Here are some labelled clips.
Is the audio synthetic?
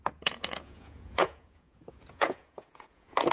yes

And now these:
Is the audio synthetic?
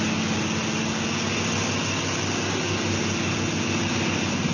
no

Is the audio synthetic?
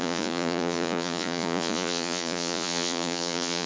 yes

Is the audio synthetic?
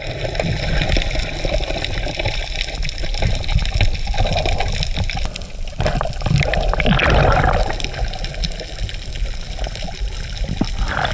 no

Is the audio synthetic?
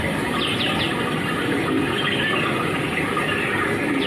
no